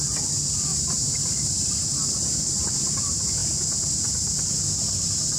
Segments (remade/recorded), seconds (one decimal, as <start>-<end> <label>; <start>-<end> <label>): 0.0-0.7 recorded; 0.7-2.9 remade; 2.9-5.4 recorded